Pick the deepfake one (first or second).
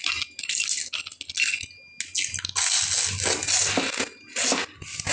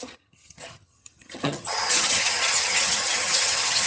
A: second